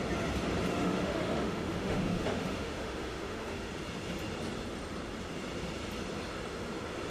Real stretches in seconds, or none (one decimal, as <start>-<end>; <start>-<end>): 0.0-0.7; 3.7-7.1

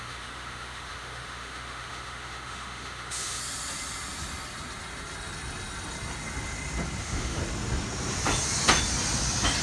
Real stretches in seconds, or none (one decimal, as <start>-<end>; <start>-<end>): 3.4-7.0; 7.4-9.6

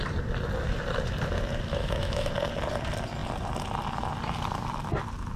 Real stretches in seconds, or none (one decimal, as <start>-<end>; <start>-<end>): 0.0-1.7; 2.3-5.4

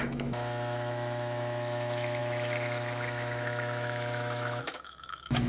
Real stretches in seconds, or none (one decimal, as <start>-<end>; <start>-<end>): none

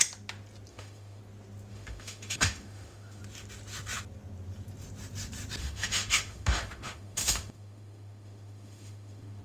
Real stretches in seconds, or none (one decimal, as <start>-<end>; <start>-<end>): 0.0-0.7; 1.2-1.7; 3.2-5.6